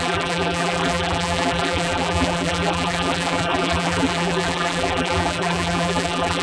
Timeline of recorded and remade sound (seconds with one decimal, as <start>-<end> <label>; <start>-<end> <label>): 0.0-6.4 remade